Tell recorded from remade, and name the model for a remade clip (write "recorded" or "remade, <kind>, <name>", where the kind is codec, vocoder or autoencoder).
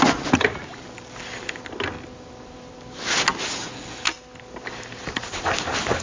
recorded